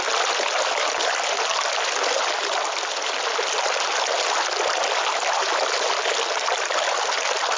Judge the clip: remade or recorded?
recorded